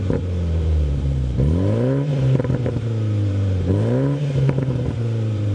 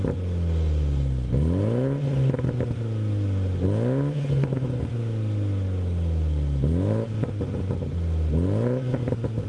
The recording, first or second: second